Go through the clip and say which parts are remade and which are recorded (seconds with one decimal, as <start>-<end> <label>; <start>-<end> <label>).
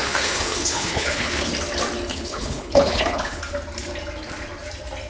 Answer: 0.0-1.5 remade; 1.5-2.1 recorded; 2.1-3.4 remade; 3.4-5.1 recorded